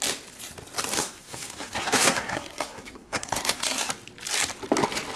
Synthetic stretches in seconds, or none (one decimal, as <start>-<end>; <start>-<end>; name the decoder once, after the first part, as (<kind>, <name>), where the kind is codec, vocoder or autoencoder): 1.0-3.9 (codec, SNAC)